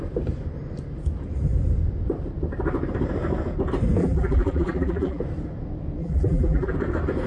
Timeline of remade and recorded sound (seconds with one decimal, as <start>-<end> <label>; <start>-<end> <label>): 0.0-4.0 recorded; 4.0-5.2 remade; 5.2-6.0 recorded; 6.0-6.7 remade; 6.7-7.3 recorded